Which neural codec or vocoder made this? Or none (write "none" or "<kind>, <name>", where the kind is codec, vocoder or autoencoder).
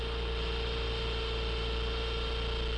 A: none